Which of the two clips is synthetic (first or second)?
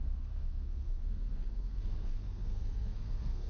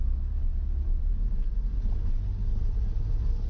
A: first